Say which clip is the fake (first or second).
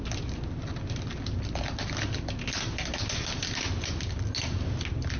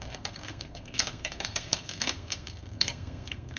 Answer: second